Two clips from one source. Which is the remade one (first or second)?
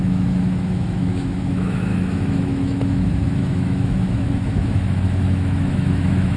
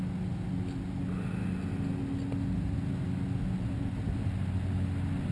first